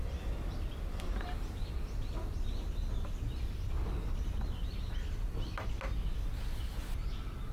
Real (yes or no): yes